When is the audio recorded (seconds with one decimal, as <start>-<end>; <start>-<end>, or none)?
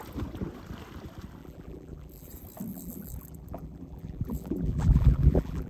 0.0-1.4; 2.3-2.7